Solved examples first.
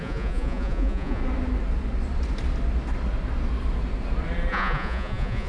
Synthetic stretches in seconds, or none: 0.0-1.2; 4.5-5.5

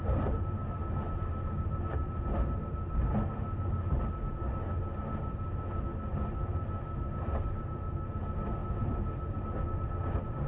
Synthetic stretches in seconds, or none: none

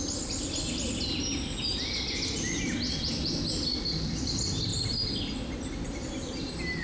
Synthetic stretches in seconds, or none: none

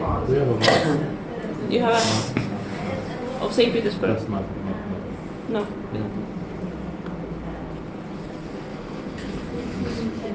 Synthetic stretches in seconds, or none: 8.7-10.3